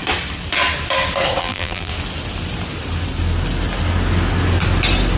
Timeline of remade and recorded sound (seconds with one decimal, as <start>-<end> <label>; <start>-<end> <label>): 0.0-1.4 recorded; 1.4-1.9 remade; 1.9-5.2 recorded